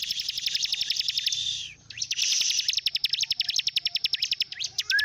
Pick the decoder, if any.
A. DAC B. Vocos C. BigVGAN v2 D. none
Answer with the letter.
C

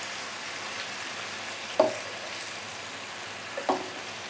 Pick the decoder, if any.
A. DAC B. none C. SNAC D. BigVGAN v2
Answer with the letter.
B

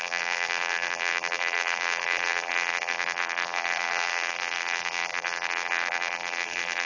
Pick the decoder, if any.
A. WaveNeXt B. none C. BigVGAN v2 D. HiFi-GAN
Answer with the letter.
C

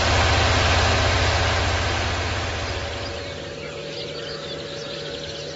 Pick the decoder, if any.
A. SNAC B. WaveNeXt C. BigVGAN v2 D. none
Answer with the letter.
D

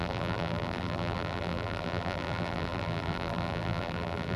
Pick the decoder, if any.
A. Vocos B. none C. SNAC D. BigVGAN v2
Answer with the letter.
D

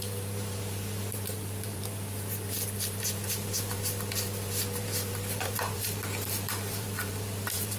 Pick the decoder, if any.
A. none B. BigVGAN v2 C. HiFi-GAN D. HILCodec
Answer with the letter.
B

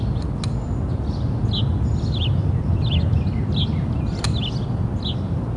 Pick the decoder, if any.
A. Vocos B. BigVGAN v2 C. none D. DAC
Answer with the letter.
C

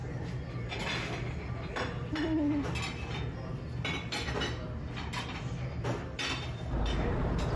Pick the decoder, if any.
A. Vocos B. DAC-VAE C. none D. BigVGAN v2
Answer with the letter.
C